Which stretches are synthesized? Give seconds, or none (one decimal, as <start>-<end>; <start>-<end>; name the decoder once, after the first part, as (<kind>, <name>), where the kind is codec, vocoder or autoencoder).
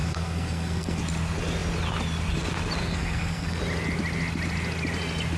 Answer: 0.0-1.0 (codec, SNAC); 2.8-3.6